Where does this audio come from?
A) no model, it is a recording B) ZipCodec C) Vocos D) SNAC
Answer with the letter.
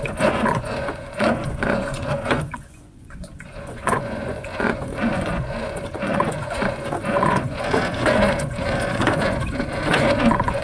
C